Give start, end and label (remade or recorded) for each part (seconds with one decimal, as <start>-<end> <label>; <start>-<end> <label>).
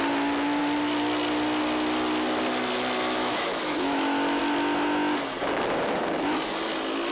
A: 0.0-3.2 recorded; 3.2-4.4 remade; 4.4-7.1 recorded